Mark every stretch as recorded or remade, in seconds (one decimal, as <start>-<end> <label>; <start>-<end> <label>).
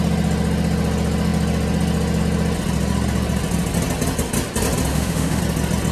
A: 0.0-4.9 recorded; 4.9-5.4 remade; 5.4-5.9 recorded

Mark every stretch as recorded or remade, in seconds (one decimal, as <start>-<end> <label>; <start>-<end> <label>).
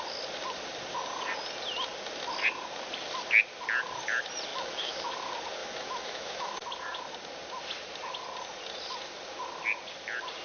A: 0.0-4.5 recorded; 4.5-5.1 remade; 5.1-5.6 recorded; 5.6-6.5 remade; 6.5-10.4 recorded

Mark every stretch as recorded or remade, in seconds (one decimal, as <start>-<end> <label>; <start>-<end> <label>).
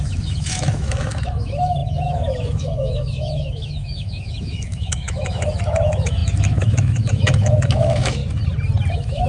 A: 0.0-8.2 remade; 8.2-8.9 recorded; 8.9-9.3 remade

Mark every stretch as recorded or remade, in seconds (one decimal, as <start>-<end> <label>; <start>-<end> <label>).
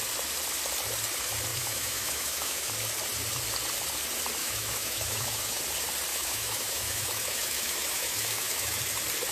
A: 0.0-1.5 recorded; 1.5-2.7 remade; 2.7-4.4 recorded; 4.4-5.6 remade; 5.6-6.1 recorded; 6.1-8.8 remade; 8.8-9.3 recorded